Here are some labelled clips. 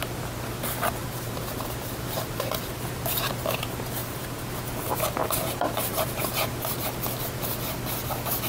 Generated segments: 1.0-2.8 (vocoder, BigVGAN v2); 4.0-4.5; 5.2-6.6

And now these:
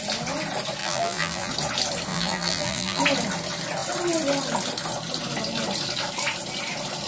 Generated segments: 0.8-1.5 (vocoder, BigVGAN v2); 2.1-3.0

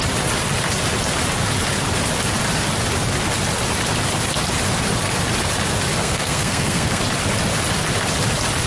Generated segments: 6.0-7.0 (codec, SNAC)

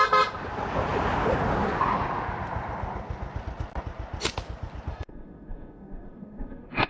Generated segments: 4.9-6.9 (autoencoder, DAC-VAE)

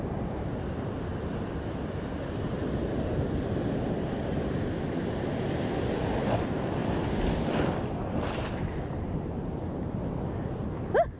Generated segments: none